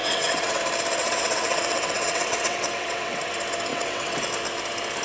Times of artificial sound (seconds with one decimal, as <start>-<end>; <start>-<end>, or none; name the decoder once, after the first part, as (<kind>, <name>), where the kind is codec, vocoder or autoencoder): 0.0-0.6 (vocoder, WaveNeXt); 1.0-3.2; 3.7-4.3